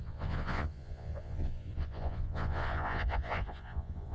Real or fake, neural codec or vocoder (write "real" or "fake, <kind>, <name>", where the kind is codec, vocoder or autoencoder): fake, vocoder, Vocos